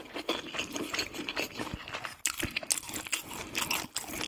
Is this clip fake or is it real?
real